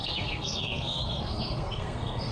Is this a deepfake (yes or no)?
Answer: yes